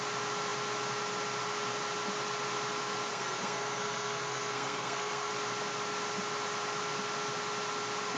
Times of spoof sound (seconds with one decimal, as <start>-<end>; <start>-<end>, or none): 3.1-5.3